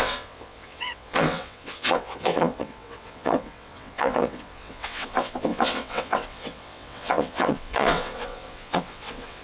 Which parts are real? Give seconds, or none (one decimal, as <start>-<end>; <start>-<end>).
none